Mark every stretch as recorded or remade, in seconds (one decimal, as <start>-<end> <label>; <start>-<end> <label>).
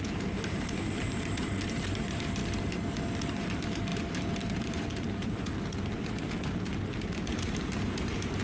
0.0-2.4 remade; 2.4-3.3 recorded; 3.3-3.9 remade; 3.9-4.7 recorded; 4.7-6.7 remade; 6.7-7.4 recorded; 7.4-8.4 remade